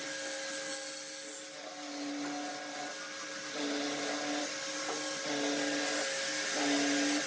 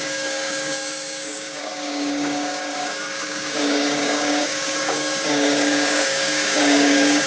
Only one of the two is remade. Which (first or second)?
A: second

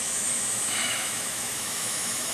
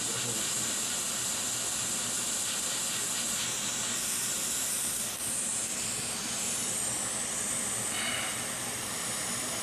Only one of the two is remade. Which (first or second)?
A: first